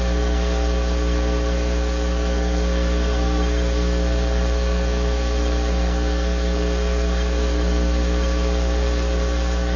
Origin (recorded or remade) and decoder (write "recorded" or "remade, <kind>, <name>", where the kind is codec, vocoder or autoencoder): remade, codec, SNAC